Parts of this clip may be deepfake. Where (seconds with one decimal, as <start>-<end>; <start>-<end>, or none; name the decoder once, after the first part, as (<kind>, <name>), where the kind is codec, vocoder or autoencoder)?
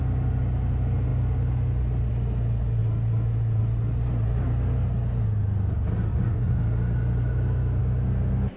6.1-6.6 (vocoder, Vocos)